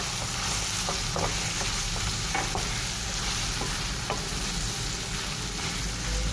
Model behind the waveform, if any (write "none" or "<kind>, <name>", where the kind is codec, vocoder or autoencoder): none